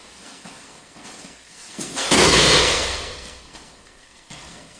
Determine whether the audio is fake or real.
fake